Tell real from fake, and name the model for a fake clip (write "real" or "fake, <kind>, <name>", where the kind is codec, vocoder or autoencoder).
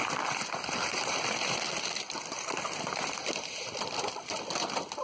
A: fake, vocoder, BigVGAN v2